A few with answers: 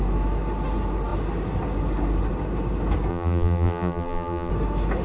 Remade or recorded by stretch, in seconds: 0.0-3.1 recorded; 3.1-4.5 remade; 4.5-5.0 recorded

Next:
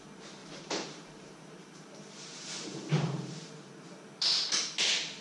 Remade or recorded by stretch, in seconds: 0.0-0.4 recorded; 0.4-3.5 remade; 3.5-5.2 recorded